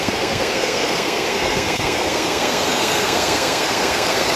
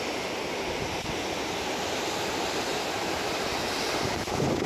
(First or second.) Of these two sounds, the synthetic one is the first